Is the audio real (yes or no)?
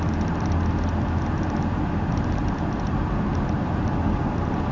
yes